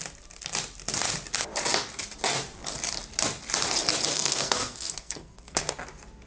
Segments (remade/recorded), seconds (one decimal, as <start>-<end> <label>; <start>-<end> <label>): 0.0-4.1 recorded; 4.1-5.7 remade; 5.7-6.3 recorded